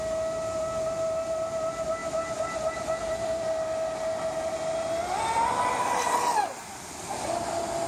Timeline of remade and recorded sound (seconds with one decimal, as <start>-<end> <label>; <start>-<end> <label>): 0.0-7.9 recorded